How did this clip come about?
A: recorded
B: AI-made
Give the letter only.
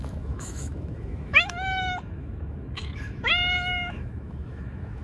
B